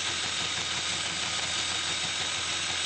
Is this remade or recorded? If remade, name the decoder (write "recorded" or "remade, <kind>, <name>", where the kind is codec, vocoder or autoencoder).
recorded